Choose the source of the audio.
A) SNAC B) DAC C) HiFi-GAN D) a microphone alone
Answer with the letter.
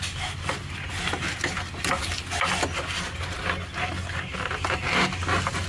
D